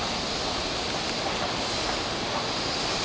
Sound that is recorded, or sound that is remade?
recorded